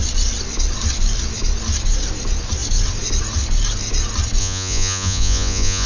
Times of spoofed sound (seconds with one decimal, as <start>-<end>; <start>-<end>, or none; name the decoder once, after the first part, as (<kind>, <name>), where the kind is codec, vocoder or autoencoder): 4.4-5.9 (vocoder, Vocos)